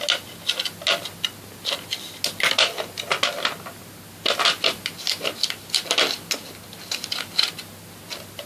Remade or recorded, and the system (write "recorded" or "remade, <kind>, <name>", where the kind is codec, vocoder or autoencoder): recorded